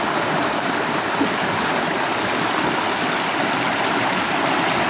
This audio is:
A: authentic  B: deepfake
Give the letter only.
A